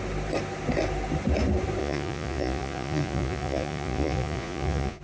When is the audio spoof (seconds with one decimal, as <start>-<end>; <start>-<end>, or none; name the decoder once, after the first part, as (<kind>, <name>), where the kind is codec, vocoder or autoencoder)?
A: 1.8-5.0 (vocoder, Vocos)

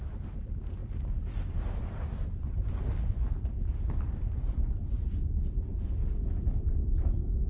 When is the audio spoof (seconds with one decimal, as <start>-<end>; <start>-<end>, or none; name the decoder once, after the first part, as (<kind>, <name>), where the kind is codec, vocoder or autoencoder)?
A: none

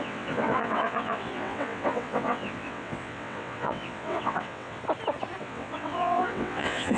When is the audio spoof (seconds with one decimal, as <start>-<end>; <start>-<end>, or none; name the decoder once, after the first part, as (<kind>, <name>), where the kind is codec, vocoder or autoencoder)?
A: 0.0-4.8 (vocoder, WaveNeXt); 5.4-7.0

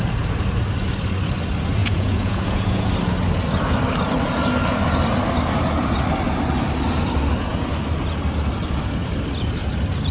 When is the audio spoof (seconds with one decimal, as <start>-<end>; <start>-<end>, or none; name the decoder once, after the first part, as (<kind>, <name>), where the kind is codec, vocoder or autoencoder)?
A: 1.8-2.9 (vocoder, Vocos)